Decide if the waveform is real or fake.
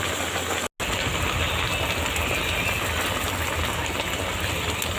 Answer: real